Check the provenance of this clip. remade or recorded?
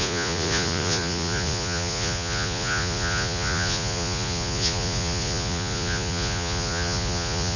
remade